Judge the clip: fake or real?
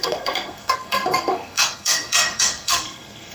fake